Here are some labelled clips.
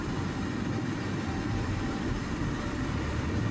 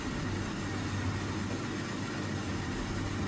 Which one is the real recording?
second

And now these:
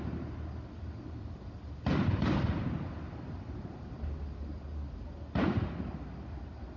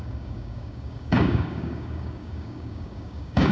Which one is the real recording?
first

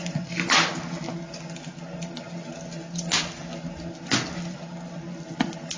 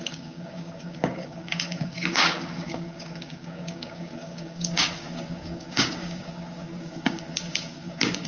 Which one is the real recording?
first